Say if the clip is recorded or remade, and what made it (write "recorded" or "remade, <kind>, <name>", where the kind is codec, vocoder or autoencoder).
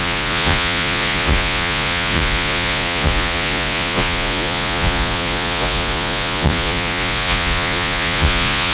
remade, vocoder, Vocos